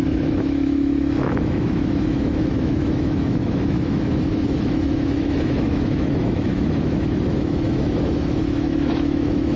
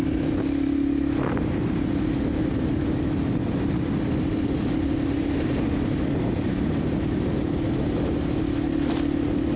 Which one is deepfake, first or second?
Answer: first